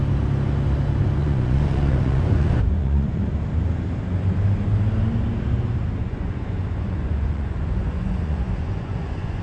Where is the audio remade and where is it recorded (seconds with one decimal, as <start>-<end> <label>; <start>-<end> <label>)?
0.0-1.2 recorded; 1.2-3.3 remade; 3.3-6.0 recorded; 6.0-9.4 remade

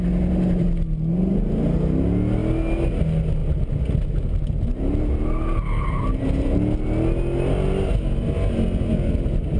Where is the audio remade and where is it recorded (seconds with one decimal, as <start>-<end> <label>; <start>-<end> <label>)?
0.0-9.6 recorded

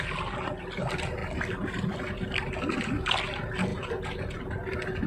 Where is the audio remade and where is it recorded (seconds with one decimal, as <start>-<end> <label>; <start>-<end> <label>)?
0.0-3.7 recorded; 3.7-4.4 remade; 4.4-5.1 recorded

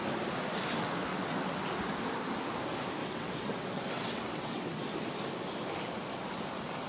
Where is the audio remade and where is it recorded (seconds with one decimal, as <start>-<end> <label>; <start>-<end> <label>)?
0.0-1.1 recorded; 1.1-1.6 remade; 1.6-3.0 recorded; 3.0-4.9 remade; 4.9-6.9 recorded